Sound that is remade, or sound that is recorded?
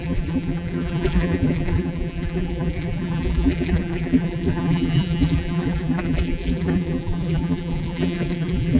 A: remade